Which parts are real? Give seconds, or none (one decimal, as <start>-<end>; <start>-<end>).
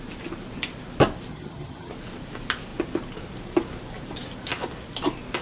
0.0-1.3; 1.9-5.4